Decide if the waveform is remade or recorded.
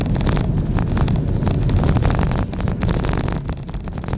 recorded